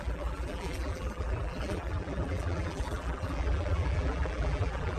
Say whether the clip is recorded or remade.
remade